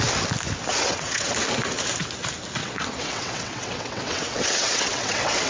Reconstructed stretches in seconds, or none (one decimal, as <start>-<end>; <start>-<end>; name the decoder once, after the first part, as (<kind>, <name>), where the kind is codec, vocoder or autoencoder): 0.7-1.3 (vocoder, WaveNeXt); 2.6-5.5